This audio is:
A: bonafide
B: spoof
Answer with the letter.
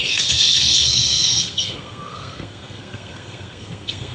B